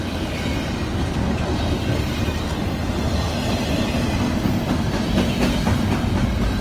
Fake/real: real